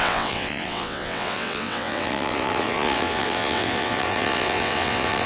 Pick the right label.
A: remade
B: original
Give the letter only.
A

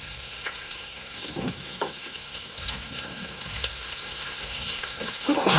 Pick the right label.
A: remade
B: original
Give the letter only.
A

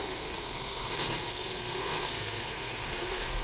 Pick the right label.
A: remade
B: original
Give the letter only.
A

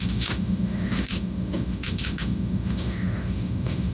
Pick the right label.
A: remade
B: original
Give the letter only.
A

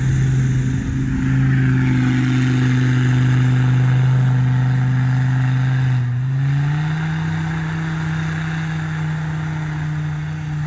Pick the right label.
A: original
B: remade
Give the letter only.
A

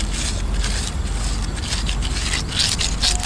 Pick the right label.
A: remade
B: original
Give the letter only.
B